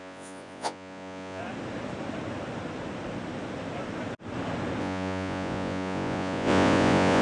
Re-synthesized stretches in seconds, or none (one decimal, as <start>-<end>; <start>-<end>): 0.0-1.4; 4.8-7.2